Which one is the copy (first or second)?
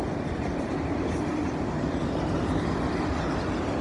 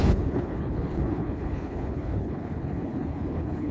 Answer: second